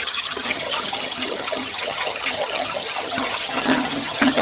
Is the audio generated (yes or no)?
yes